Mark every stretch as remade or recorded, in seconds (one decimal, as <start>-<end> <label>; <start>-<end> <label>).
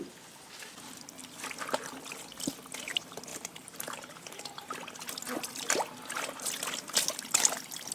0.0-3.3 recorded; 3.3-4.8 remade; 4.8-7.9 recorded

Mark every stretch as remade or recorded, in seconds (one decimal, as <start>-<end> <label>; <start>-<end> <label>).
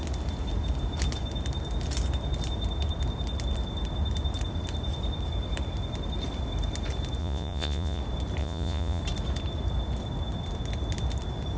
0.0-7.2 recorded; 7.2-8.0 remade; 8.0-8.4 recorded; 8.4-9.0 remade; 9.0-11.6 recorded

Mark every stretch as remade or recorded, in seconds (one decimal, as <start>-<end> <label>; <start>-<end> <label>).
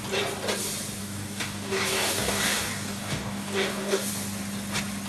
0.0-1.0 recorded; 1.0-4.1 remade; 4.1-5.1 recorded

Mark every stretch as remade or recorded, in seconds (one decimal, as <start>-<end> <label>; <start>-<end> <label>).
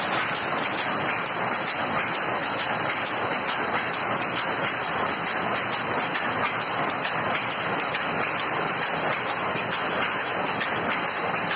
0.0-11.6 recorded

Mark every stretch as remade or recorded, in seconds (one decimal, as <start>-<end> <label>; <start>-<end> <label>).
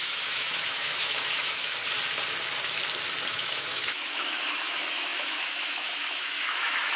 0.0-1.8 remade; 1.8-3.3 recorded; 3.3-7.0 remade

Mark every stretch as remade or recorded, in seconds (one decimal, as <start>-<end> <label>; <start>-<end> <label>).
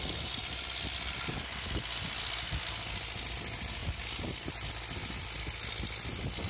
0.0-6.5 recorded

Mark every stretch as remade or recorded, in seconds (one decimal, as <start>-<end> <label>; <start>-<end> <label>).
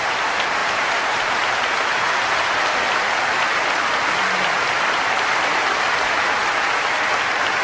0.0-0.6 recorded; 0.6-1.5 remade; 1.5-7.6 recorded